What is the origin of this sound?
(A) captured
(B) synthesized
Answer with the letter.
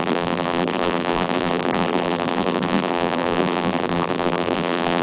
B